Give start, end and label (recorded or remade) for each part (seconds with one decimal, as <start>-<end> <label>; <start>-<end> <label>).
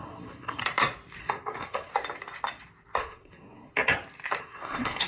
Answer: 0.0-0.6 remade; 0.6-1.2 recorded; 1.2-1.9 remade; 1.9-3.0 recorded; 3.0-3.7 remade; 3.7-4.4 recorded; 4.4-5.1 remade